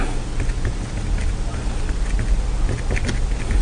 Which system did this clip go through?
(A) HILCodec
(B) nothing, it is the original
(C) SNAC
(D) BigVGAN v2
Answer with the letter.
B